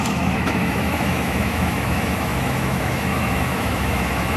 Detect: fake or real fake